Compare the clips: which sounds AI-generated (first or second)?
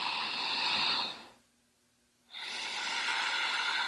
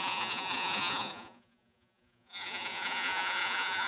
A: second